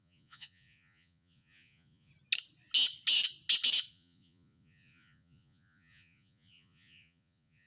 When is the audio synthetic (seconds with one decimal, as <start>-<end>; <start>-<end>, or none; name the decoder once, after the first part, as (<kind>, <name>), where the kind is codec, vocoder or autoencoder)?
0.0-2.1 (vocoder, Vocos); 3.9-7.7